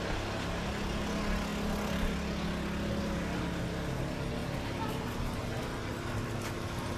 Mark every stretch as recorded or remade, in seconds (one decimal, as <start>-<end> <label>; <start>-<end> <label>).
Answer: 0.0-7.0 recorded